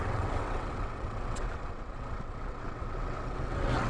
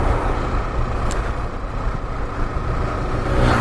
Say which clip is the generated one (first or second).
first